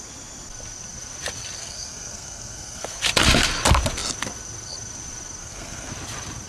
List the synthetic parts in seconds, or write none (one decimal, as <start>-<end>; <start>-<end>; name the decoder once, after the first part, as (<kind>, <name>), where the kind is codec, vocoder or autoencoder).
1.6-3.0 (codec, SNAC); 5.4-5.9